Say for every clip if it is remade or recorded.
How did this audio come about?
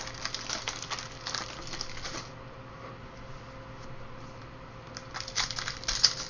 recorded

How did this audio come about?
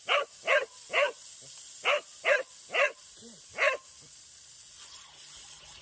recorded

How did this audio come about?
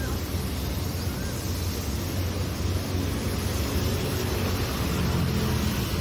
recorded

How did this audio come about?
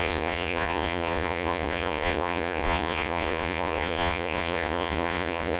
remade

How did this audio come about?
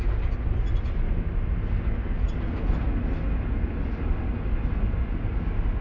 recorded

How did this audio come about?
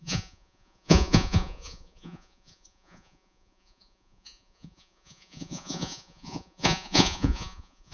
remade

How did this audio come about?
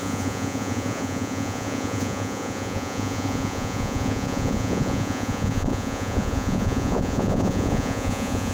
remade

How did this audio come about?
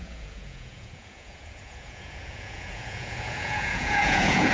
remade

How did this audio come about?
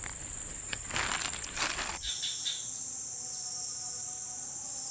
recorded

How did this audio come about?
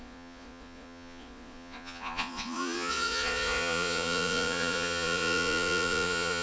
remade